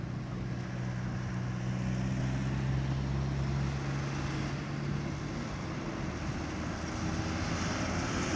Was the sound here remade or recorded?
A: recorded